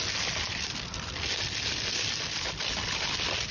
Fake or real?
real